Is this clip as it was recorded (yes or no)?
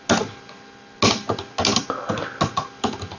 yes